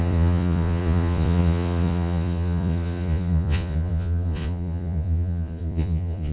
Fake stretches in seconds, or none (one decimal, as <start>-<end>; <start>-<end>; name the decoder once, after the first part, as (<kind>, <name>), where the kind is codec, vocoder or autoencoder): 0.0-6.3 (vocoder, Vocos)